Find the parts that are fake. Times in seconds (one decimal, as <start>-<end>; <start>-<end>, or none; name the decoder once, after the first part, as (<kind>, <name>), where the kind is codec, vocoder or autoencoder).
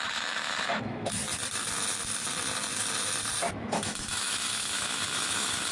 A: 0.0-1.2 (autoencoder, DAC-VAE); 3.5-5.7